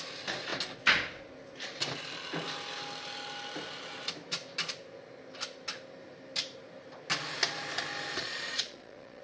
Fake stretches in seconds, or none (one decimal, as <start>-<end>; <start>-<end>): 8.2-9.2